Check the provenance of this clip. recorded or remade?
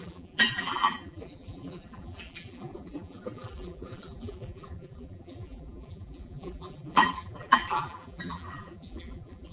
remade